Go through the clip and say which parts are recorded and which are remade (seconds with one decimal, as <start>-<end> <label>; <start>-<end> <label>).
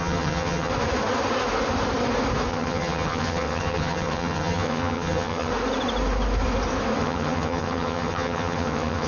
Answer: 0.0-0.7 remade; 0.7-2.5 recorded; 2.5-5.5 remade; 5.5-7.0 recorded; 7.0-9.1 remade